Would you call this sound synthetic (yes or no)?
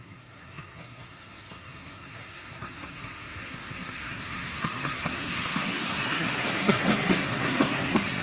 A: yes